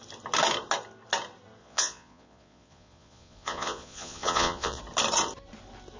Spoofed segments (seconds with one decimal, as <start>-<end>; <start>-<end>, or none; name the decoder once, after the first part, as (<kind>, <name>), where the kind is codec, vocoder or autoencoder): 1.6-4.8 (vocoder, Vocos)